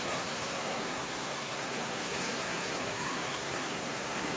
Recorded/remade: remade